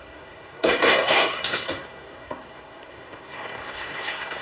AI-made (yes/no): yes